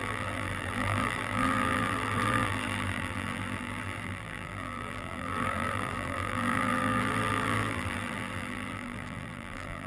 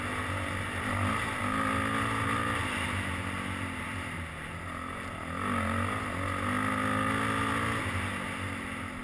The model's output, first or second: first